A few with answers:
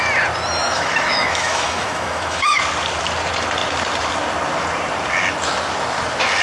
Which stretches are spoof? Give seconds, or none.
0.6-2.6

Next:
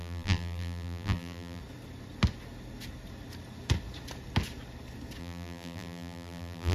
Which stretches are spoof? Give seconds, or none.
0.0-1.6; 5.2-6.7

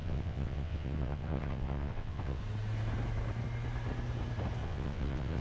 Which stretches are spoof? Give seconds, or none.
0.0-2.4; 4.6-5.4